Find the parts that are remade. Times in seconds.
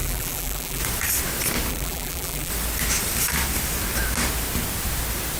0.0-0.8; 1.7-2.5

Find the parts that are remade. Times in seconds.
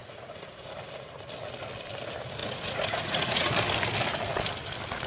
0.0-0.7; 2.4-3.5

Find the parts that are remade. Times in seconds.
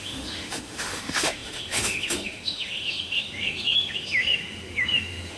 0.0-5.4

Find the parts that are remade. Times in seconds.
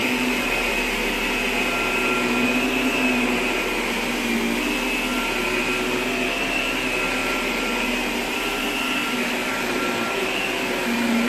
0.0-0.7; 7.2-8.6; 9.4-10.4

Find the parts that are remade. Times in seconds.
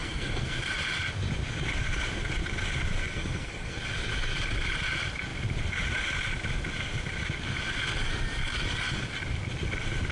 0.0-0.6; 3.0-3.8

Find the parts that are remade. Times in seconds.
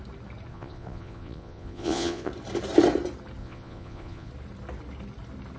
0.5-2.3; 3.4-4.3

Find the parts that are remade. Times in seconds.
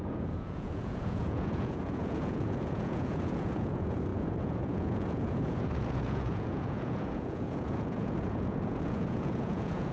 0.0-9.9